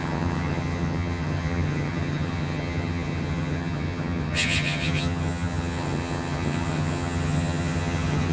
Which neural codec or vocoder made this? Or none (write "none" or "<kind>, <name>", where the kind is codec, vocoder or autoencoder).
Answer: vocoder, HiFi-GAN